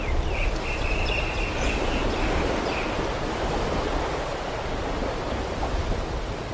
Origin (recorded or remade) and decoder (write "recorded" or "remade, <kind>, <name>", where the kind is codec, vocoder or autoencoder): recorded